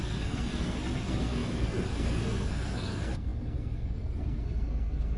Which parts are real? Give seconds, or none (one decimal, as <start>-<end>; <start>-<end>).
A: none